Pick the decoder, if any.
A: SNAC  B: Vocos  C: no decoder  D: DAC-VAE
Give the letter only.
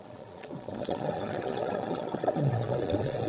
B